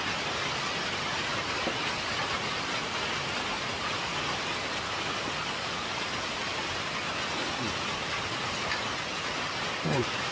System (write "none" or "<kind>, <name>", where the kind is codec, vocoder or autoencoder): none